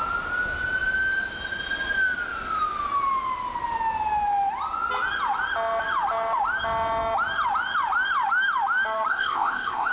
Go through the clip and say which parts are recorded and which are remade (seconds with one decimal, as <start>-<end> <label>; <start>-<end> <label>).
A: 0.0-9.1 recorded; 9.1-9.9 remade